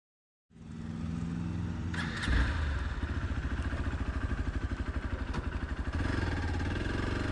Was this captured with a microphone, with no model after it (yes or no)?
yes